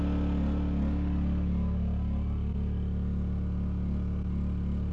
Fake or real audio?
real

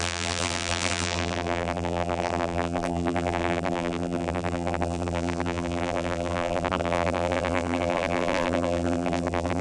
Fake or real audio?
fake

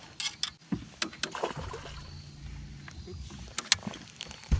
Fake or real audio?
real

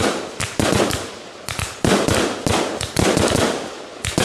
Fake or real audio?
real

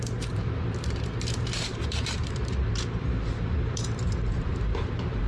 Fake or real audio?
fake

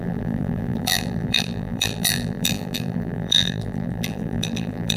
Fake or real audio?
fake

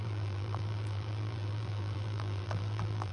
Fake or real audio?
fake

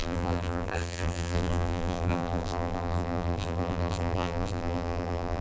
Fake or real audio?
fake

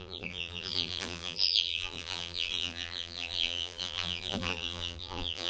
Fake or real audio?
fake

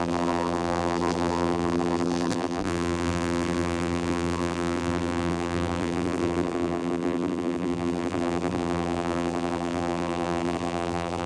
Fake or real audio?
fake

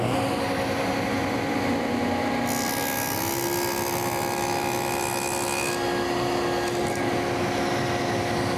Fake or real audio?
real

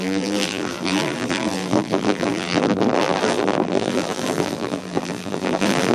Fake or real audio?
fake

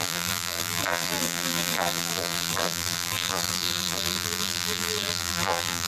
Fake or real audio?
fake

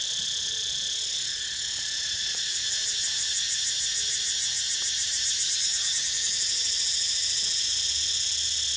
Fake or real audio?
real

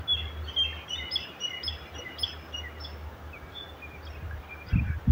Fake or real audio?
real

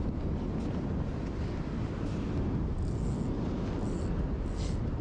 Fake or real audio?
real